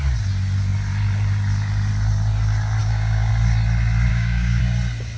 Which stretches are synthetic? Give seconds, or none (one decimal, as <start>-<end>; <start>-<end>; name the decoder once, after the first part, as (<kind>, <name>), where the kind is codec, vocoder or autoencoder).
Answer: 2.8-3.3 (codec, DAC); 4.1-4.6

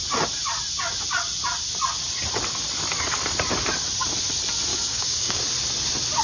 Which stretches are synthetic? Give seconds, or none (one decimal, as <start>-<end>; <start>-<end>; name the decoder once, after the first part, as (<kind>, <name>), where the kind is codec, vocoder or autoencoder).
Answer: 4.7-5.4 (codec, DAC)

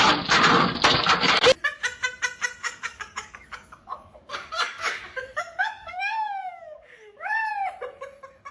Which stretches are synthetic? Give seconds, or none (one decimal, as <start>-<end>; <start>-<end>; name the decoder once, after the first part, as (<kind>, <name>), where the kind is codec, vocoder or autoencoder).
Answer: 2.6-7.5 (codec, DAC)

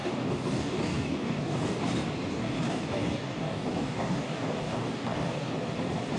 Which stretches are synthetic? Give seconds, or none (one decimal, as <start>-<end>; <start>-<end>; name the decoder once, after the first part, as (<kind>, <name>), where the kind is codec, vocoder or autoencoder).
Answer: 0.0-1.8 (codec, DAC); 2.3-5.5

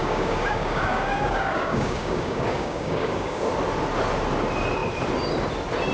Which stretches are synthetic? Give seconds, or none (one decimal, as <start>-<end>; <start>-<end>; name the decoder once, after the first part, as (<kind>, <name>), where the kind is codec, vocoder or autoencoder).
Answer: 0.0-3.5 (codec, DAC)

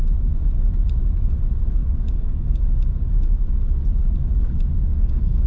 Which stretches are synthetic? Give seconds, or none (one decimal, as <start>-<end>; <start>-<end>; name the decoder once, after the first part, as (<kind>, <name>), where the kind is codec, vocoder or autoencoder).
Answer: 1.8-2.6 (codec, DAC); 4.9-5.5

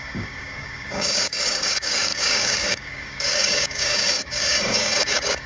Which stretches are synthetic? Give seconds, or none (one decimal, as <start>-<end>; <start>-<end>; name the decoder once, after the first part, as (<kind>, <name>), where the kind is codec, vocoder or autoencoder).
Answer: 0.0-5.5 (codec, DAC)